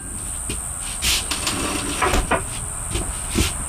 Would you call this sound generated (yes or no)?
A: no